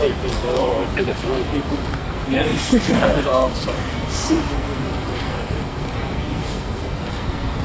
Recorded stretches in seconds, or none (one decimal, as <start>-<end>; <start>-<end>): none